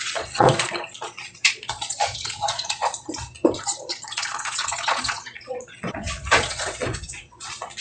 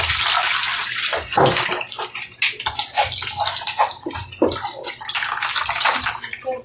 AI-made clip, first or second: first